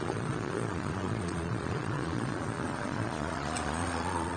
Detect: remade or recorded remade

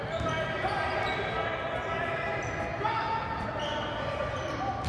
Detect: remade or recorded recorded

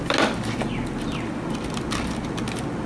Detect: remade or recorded recorded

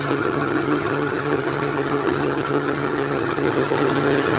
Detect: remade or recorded remade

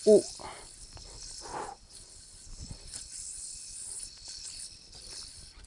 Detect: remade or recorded recorded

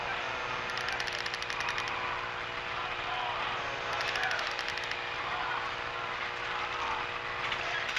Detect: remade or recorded recorded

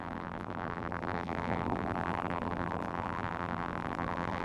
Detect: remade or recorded remade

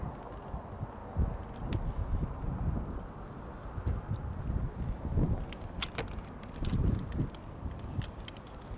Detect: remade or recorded recorded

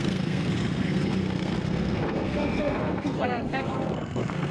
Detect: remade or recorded remade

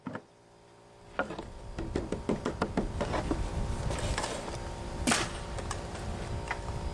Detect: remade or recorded recorded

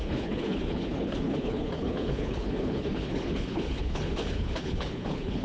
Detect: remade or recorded remade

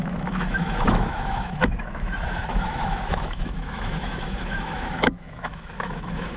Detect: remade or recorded remade